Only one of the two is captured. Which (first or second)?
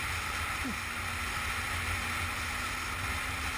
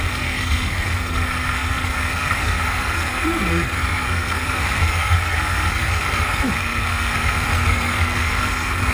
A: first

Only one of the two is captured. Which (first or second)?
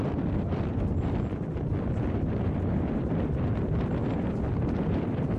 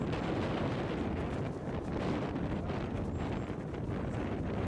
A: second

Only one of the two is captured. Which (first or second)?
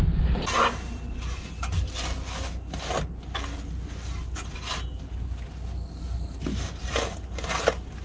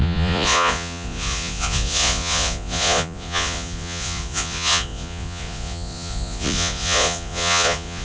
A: first